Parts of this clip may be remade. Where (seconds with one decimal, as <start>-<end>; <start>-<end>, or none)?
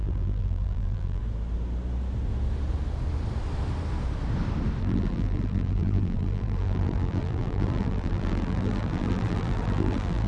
0.0-1.2; 4.8-10.3